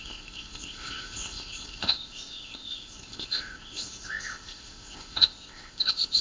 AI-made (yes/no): yes